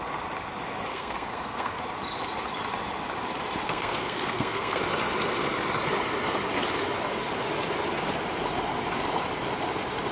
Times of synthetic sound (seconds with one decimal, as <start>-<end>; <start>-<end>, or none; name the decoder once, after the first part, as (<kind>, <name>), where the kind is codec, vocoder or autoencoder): 0.9-1.8 (codec, SNAC); 3.6-4.8